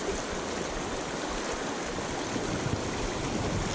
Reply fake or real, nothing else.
real